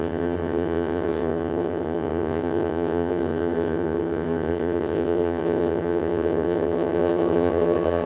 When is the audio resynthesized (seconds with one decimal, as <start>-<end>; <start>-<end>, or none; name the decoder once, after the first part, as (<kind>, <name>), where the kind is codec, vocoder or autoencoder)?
0.0-8.1 (vocoder, HiFi-GAN)